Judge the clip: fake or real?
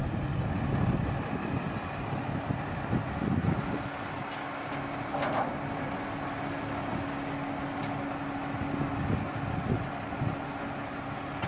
real